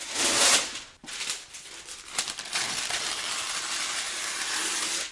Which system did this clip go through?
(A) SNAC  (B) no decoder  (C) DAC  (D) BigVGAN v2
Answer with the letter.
B